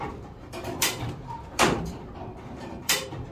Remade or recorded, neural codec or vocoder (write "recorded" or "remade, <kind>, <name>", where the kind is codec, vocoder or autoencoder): remade, vocoder, BigVGAN v2